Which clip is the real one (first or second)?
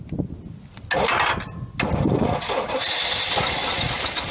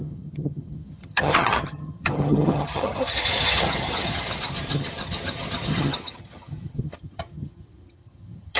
first